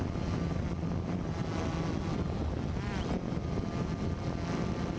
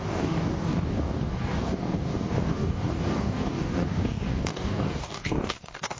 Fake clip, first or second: second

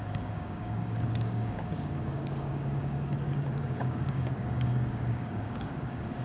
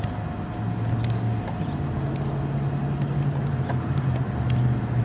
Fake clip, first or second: first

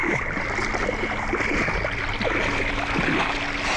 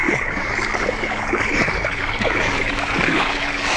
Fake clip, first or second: second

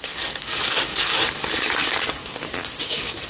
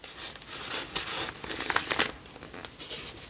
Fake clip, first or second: first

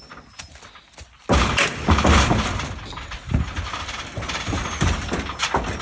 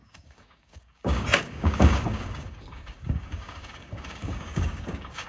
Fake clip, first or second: second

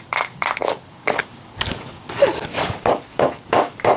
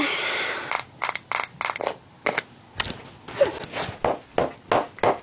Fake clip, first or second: first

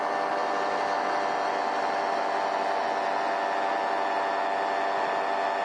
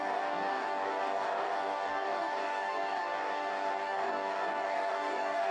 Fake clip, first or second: second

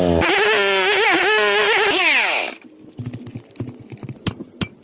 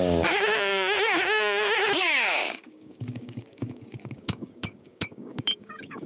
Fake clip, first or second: second